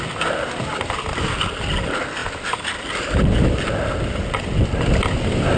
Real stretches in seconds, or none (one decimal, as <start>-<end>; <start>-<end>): 0.0-5.6